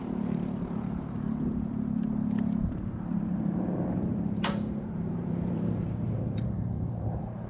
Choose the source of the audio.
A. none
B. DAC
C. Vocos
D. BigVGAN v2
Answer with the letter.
D